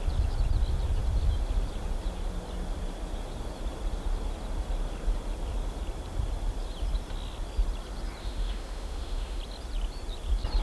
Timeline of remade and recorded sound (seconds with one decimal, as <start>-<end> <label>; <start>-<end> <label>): 0.0-8.2 recorded; 8.2-9.4 remade; 9.4-10.6 recorded